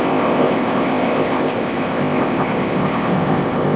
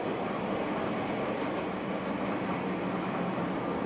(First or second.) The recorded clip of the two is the second